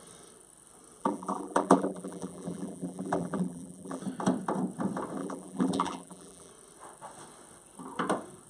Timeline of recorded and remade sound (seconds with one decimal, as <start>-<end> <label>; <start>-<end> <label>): 0.0-1.0 recorded; 1.0-4.0 remade; 4.0-5.2 recorded; 5.2-6.5 remade; 6.5-8.5 recorded